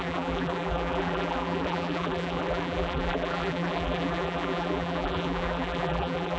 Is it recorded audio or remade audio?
remade